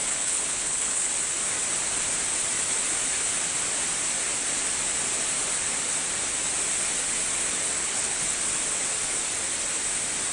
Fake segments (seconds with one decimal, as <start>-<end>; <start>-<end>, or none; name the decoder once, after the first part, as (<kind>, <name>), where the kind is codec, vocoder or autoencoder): 0.0-1.1 (codec, HILCodec); 7.8-8.4

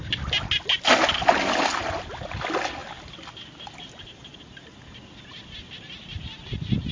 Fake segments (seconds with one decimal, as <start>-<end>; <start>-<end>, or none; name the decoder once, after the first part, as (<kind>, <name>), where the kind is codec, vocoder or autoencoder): none

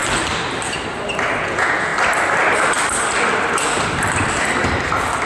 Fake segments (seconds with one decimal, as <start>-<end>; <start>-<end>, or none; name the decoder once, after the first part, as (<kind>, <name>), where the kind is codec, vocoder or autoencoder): 1.4-1.9 (vocoder, Vocos)

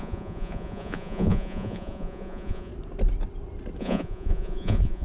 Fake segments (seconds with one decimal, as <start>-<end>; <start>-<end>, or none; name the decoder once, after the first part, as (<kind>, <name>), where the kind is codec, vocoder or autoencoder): 0.0-2.7 (vocoder, Vocos); 3.8-5.0

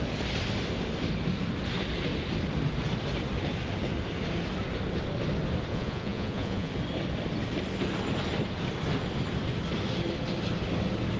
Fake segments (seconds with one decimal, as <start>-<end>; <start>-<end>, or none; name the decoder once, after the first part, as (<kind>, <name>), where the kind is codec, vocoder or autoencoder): 5.7-6.7 (vocoder, Vocos)

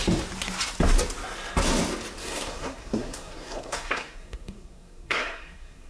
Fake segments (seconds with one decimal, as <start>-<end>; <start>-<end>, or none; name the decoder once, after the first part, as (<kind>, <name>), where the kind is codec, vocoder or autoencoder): 2.2-5.9 (codec, SNAC)

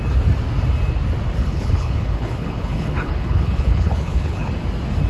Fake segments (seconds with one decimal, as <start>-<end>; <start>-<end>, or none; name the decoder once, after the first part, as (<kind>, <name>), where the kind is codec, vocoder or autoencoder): 1.4-4.5 (codec, HILCodec)

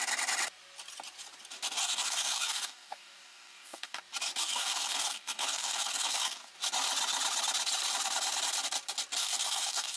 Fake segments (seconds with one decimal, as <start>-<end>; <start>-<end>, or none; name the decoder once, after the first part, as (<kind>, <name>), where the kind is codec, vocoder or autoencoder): 1.8-4.0 (codec, DAC); 4.4-6.5; 9.2-10.0